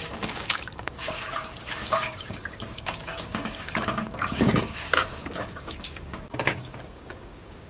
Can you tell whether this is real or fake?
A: fake